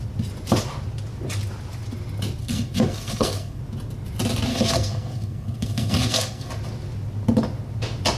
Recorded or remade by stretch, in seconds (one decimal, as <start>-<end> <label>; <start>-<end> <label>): 0.0-2.4 recorded; 2.4-3.6 remade; 3.6-4.5 recorded; 4.5-6.5 remade; 6.5-8.2 recorded